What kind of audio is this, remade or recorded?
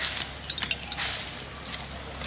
recorded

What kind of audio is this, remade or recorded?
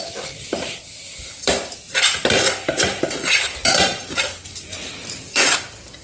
remade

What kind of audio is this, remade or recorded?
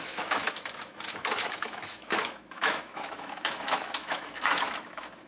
remade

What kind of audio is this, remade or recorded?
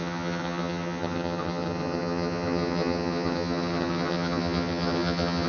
remade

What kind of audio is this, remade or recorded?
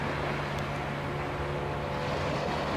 recorded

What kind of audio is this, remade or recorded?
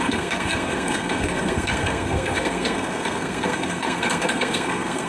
remade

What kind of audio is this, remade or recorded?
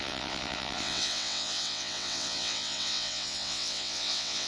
remade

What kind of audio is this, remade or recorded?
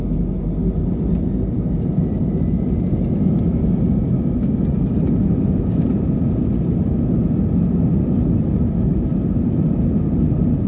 recorded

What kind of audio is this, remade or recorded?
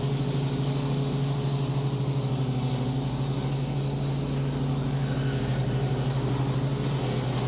recorded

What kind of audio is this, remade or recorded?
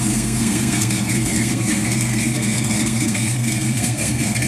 remade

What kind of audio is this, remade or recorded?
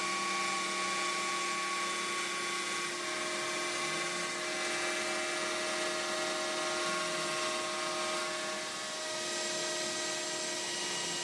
recorded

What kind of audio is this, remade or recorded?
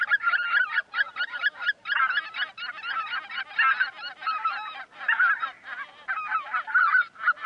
recorded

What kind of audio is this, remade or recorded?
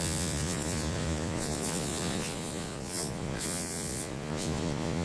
remade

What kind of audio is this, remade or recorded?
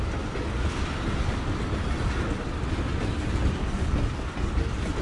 recorded